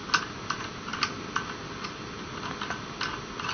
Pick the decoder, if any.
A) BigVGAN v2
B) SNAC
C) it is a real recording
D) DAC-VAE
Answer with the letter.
C